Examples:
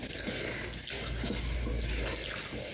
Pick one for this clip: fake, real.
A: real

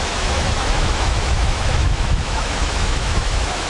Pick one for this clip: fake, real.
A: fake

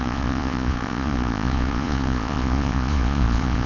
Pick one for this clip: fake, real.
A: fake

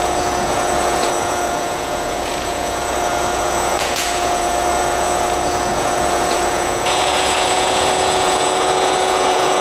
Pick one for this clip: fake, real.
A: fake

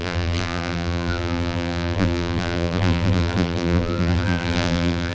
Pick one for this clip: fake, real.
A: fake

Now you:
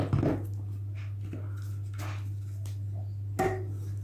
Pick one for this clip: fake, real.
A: real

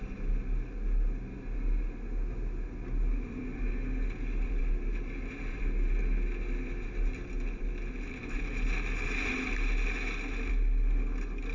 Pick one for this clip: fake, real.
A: real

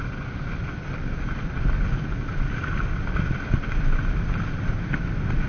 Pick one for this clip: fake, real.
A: real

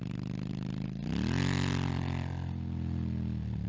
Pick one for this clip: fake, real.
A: real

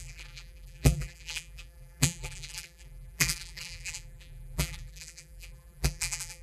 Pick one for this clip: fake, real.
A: fake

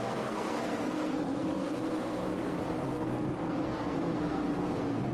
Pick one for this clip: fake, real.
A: fake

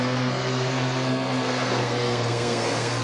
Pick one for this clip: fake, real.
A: fake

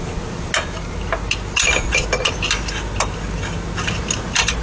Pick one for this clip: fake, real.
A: real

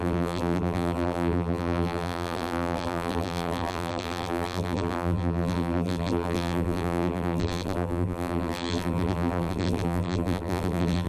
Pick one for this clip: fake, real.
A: fake